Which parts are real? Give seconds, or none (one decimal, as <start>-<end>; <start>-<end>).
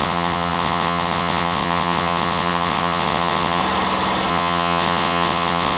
3.6-4.3